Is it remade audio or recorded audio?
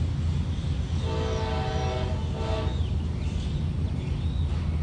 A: recorded